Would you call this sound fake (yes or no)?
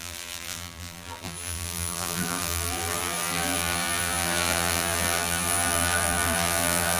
yes